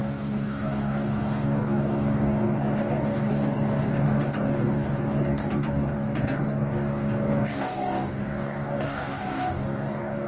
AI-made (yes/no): yes